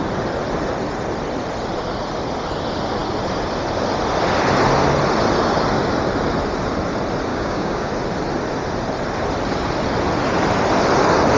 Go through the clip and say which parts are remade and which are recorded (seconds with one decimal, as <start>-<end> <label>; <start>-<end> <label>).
0.0-7.3 recorded; 7.3-7.9 remade; 7.9-11.4 recorded

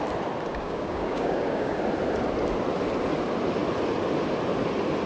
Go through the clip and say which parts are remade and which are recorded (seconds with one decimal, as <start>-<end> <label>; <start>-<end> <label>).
0.0-0.5 recorded; 0.5-1.8 remade; 1.8-5.1 recorded

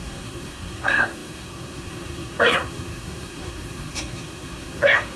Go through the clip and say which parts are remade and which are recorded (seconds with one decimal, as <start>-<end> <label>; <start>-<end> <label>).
0.0-5.2 remade